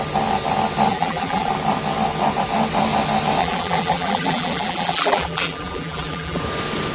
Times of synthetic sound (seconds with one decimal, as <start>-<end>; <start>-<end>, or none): 0.9-1.5; 3.4-6.4